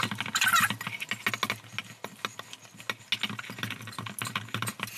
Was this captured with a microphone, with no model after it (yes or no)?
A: yes